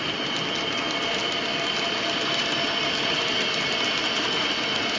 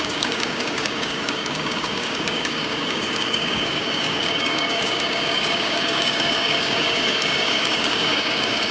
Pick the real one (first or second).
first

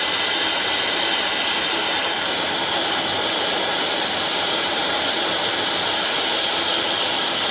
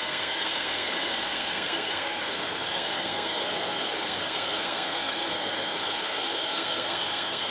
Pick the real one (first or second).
first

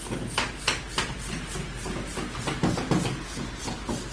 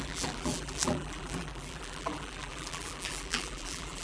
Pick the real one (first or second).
first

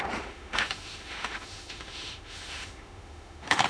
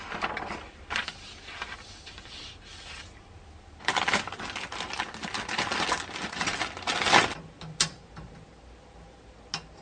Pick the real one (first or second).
second